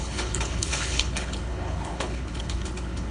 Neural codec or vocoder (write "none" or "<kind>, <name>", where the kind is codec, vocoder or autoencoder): codec, HILCodec